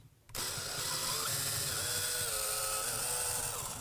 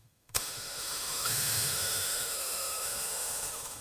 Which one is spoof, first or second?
second